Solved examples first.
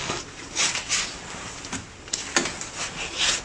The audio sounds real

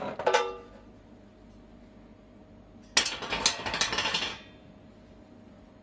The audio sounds real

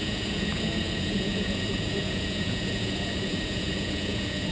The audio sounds fake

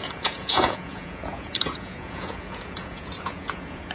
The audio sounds fake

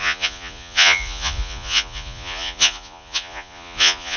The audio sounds fake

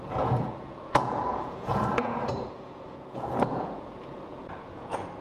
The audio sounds fake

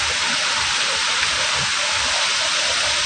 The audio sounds real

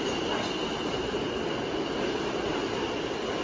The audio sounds real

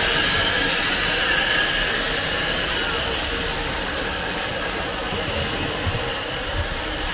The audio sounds real